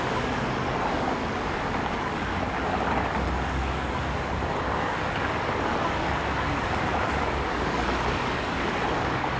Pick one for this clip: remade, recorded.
remade